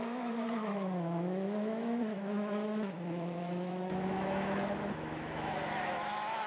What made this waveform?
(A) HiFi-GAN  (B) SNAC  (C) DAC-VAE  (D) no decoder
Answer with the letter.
C